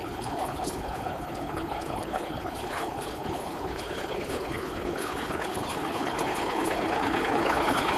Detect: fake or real fake